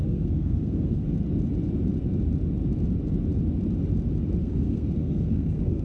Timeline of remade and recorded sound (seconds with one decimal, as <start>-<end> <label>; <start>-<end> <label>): 0.0-1.1 remade; 1.1-4.4 recorded; 4.4-5.8 remade